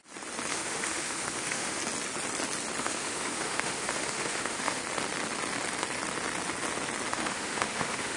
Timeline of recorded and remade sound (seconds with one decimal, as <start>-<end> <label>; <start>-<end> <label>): 0.0-0.5 recorded; 0.5-1.8 remade; 1.8-2.8 recorded; 2.8-4.8 remade; 4.8-7.1 recorded; 7.1-8.2 remade